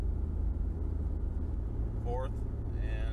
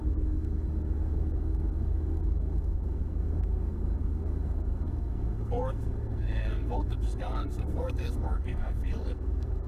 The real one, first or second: first